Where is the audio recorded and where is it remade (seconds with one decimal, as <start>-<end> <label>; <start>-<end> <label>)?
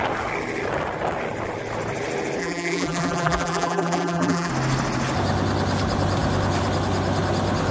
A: 0.0-2.4 recorded; 2.4-4.5 remade; 4.5-7.7 recorded